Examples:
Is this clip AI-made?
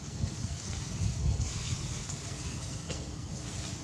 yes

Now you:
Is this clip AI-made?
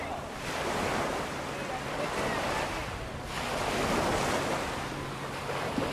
no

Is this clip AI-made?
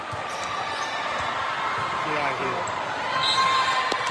no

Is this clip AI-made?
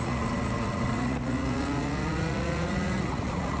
yes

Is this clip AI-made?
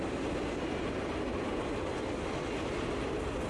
no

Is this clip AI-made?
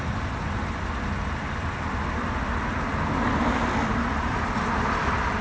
no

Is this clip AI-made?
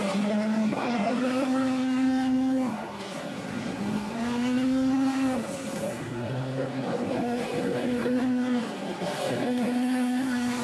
yes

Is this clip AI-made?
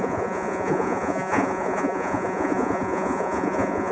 yes